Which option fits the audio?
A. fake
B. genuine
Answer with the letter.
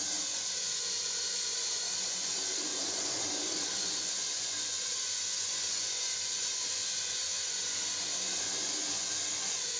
A